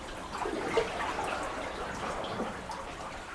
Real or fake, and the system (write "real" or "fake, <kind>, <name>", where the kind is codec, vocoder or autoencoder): real